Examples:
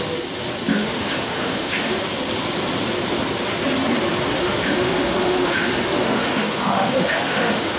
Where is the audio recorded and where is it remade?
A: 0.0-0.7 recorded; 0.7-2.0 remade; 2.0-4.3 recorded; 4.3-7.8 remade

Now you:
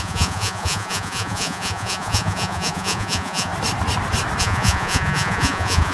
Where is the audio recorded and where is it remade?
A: 0.0-3.5 remade; 3.5-4.4 recorded; 4.4-5.9 remade

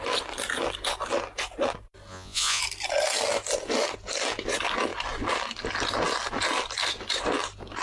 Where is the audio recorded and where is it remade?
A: 0.0-2.1 recorded; 2.1-2.6 remade; 2.6-7.8 recorded

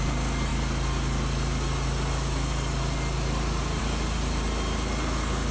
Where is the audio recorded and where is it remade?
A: 0.0-5.5 recorded

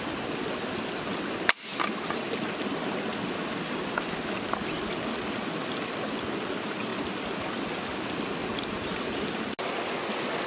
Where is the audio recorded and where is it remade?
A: 0.0-10.5 recorded